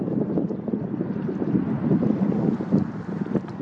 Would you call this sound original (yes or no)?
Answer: yes